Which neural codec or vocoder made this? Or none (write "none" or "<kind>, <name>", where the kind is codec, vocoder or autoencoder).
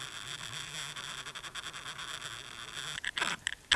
none